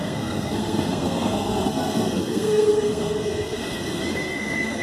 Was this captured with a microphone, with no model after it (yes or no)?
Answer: no